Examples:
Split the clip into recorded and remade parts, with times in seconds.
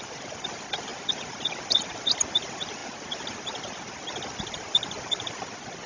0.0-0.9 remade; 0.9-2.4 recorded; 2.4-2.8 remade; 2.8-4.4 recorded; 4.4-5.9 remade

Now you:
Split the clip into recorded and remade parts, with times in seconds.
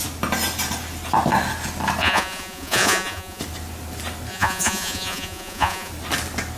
0.0-2.0 recorded; 2.0-3.4 remade; 3.4-4.3 recorded; 4.3-5.9 remade; 5.9-6.6 recorded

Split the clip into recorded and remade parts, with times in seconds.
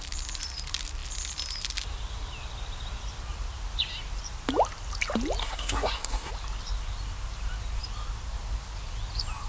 0.0-5.4 recorded; 5.4-6.3 remade; 6.3-9.5 recorded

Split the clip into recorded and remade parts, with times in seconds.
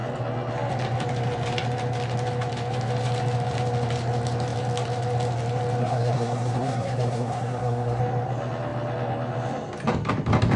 0.0-5.8 recorded; 5.8-8.0 remade; 8.0-10.6 recorded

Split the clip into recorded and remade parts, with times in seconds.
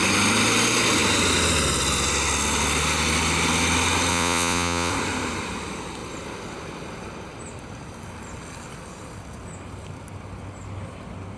0.0-4.1 recorded; 4.1-4.9 remade; 4.9-11.4 recorded